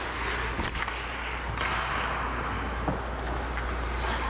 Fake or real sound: real